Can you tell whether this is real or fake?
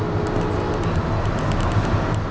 real